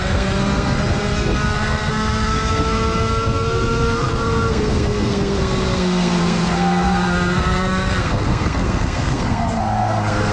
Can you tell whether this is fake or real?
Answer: fake